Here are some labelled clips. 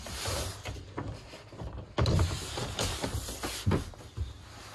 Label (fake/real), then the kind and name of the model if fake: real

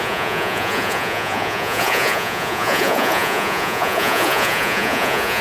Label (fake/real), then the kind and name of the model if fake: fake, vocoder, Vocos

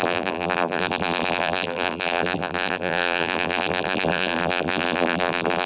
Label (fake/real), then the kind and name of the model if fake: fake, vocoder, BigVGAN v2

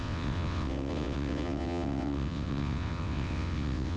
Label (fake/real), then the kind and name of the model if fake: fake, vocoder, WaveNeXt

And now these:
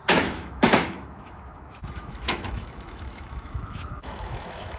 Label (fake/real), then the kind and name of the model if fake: fake, autoencoder, DAC-VAE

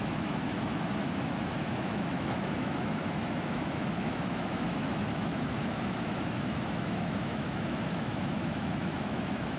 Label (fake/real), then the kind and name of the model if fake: fake, autoencoder, DAC-VAE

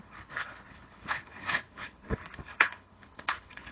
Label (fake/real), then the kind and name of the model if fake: fake, codec, HILCodec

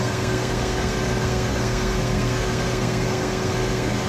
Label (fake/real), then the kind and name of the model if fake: fake, codec, SNAC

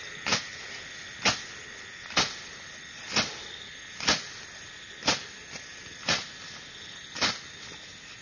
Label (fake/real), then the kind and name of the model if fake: real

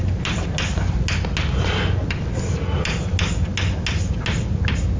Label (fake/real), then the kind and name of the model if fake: real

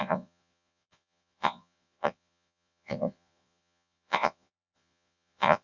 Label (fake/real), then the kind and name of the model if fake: fake, vocoder, Vocos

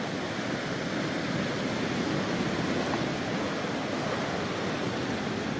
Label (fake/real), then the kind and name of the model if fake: real